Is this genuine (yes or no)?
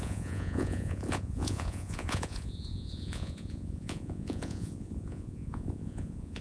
no